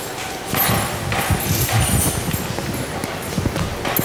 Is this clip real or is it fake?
real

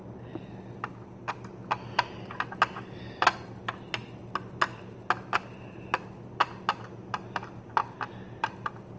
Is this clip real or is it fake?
real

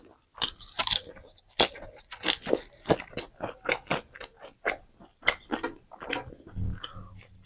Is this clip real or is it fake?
real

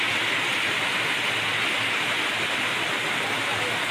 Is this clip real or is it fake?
real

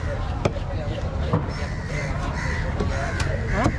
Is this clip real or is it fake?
real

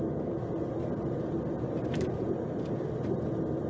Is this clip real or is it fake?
real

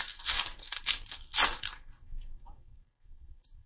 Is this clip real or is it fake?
fake